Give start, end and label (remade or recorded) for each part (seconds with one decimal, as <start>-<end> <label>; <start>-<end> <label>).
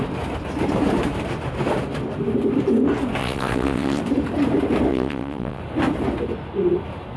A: 0.0-3.2 recorded; 3.2-4.0 remade; 4.0-4.9 recorded; 4.9-5.6 remade; 5.6-7.2 recorded